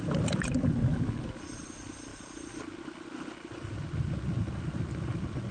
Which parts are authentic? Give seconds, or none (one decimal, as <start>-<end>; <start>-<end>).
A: 0.0-5.5